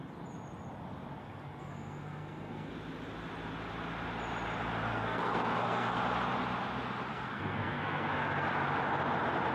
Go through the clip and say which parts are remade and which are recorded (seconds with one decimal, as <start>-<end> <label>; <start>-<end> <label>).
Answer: 0.0-1.2 recorded; 1.2-2.7 remade; 2.7-4.9 recorded; 4.9-6.0 remade; 6.0-7.1 recorded; 7.1-8.5 remade; 8.5-9.5 recorded